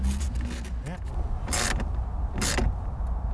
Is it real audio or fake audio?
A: real